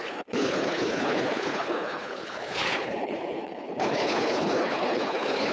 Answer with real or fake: fake